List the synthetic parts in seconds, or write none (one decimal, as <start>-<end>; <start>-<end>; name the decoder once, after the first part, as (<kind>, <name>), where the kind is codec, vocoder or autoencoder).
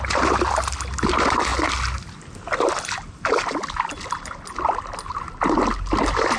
none